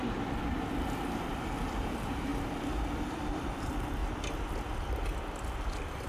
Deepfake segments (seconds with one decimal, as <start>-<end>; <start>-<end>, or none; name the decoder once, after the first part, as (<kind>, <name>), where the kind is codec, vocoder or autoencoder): 0.6-2.3 (vocoder, BigVGAN v2); 3.1-6.1